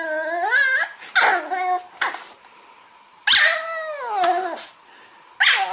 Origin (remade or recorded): recorded